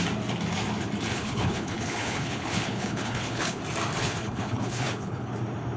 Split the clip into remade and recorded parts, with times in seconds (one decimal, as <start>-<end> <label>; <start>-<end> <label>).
0.0-1.1 recorded; 1.1-3.6 remade; 3.6-4.0 recorded; 4.0-5.3 remade; 5.3-5.8 recorded